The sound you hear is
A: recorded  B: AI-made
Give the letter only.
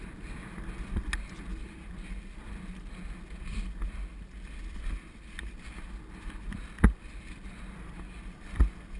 A